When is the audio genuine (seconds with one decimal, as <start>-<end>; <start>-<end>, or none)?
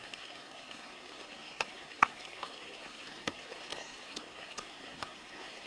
none